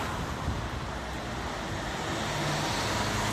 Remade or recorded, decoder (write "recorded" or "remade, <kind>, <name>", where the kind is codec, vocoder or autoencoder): recorded